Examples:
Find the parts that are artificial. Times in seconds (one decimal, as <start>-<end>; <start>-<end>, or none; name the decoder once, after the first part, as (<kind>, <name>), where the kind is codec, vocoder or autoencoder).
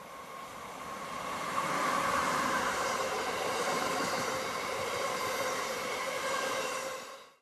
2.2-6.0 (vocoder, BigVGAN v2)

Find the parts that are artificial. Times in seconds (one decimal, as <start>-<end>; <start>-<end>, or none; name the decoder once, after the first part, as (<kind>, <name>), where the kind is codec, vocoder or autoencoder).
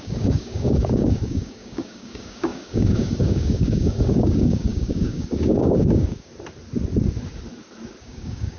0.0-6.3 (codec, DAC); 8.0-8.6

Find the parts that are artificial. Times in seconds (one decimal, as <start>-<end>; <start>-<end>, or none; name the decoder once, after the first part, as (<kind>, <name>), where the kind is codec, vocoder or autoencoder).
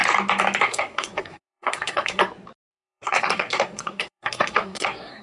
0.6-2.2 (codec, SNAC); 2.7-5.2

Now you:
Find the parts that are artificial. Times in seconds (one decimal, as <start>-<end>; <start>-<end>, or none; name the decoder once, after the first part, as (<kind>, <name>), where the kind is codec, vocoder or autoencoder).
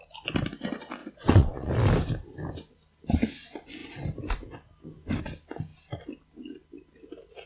1.0-1.7 (vocoder, WaveNeXt)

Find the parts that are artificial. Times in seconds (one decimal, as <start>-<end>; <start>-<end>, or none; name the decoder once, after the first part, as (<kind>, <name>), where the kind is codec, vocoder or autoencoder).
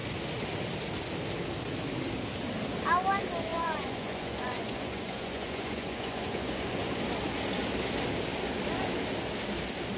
3.5-7.0 (vocoder, Vocos)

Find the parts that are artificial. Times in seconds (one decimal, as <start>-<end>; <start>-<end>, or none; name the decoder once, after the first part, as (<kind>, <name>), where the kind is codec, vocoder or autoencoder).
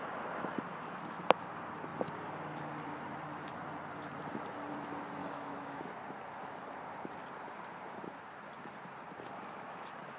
5.2-5.8 (autoencoder, DAC-VAE)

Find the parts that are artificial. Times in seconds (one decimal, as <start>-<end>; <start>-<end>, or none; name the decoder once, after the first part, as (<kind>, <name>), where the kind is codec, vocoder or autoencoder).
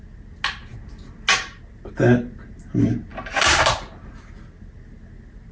3.1-3.7 (vocoder, BigVGAN v2)